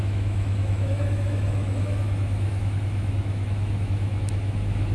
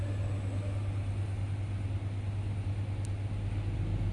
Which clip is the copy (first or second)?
first